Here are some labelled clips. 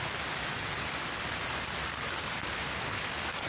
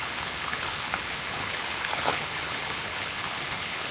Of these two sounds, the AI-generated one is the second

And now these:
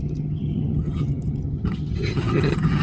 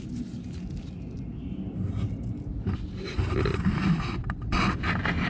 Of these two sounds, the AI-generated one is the first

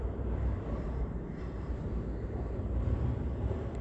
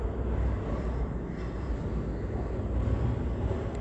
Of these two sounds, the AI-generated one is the first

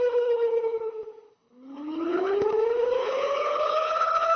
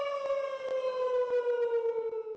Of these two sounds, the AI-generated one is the first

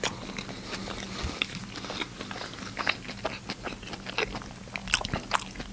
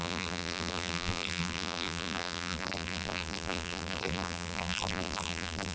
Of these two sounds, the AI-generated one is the second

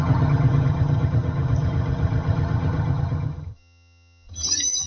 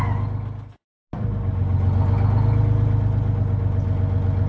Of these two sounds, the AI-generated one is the first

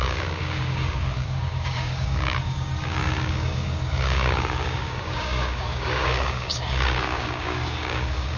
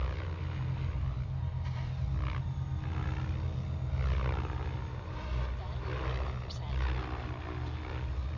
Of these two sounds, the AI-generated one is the first